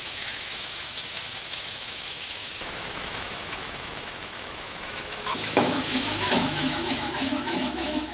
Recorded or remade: remade